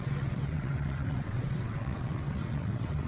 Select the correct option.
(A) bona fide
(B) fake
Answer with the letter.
B